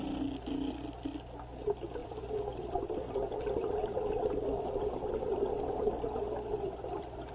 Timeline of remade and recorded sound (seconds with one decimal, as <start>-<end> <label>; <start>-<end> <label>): 0.0-2.0 recorded; 2.0-5.8 remade; 5.8-6.5 recorded; 6.5-7.3 remade